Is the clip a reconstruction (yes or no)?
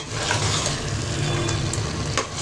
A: no